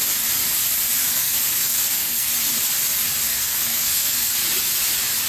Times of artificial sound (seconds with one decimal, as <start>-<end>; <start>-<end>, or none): 1.0-2.3; 3.3-4.3